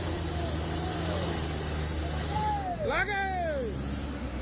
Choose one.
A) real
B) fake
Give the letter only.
A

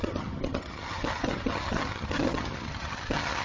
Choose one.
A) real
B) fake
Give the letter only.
B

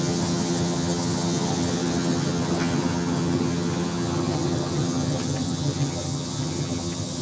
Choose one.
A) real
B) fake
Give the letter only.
B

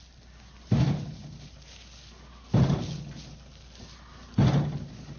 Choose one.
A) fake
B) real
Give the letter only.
B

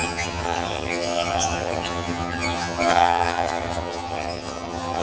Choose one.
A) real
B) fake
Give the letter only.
B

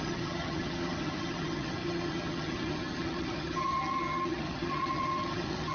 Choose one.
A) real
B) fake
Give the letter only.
B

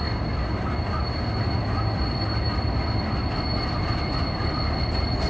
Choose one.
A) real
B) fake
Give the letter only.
A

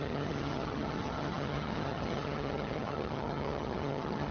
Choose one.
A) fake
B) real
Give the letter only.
A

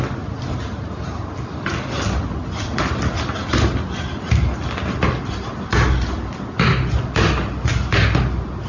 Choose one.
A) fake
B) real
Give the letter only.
B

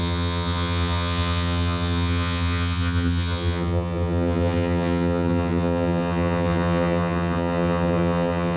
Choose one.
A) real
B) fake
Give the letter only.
B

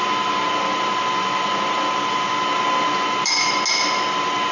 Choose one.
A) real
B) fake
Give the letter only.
A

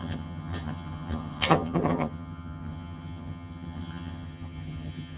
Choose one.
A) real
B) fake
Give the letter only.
B